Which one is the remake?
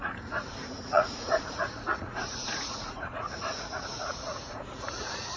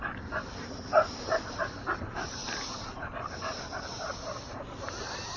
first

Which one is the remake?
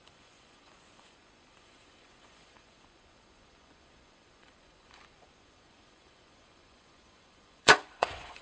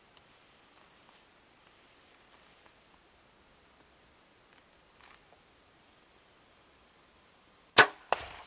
first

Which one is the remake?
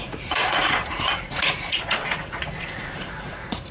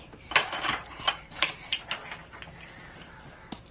first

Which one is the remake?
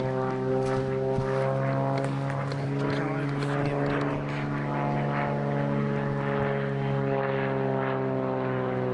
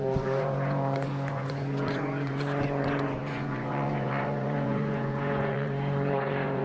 second